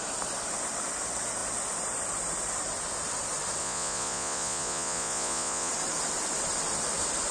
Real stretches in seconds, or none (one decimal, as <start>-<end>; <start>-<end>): 0.0-3.6; 5.7-7.3

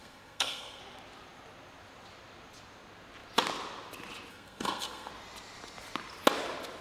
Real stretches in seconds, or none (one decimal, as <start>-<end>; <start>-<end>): 0.8-4.3; 5.1-6.8

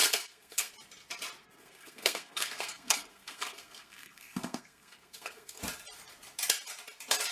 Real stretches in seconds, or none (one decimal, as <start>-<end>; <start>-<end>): 0.7-1.4; 5.6-7.3

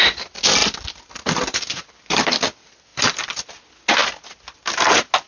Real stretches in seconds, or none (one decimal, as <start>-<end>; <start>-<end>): 0.0-0.6; 2.0-2.9; 3.5-5.3

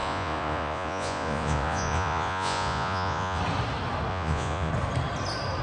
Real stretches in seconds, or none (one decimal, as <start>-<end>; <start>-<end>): 3.4-4.1; 4.7-5.6

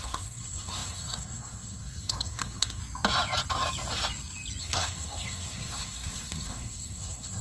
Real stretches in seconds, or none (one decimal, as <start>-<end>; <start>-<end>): 2.8-4.6